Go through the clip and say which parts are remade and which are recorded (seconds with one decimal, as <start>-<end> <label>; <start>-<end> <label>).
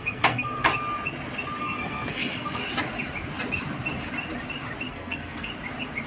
0.0-0.7 remade; 0.7-1.6 recorded; 1.6-2.6 remade; 2.6-4.9 recorded; 4.9-5.5 remade; 5.5-6.1 recorded